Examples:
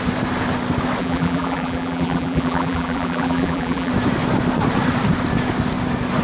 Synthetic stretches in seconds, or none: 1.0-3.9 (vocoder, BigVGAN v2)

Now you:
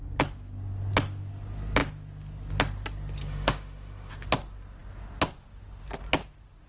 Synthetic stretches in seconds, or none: 3.2-4.1 (autoencoder, DAC-VAE)

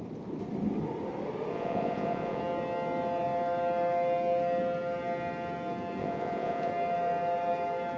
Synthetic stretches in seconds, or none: 1.5-2.4 (vocoder, Vocos); 6.0-6.7